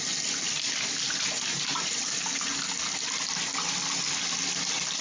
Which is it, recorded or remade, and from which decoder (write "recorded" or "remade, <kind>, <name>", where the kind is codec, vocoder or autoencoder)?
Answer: recorded